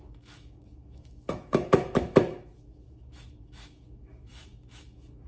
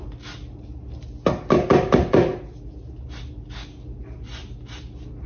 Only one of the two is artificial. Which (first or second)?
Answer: first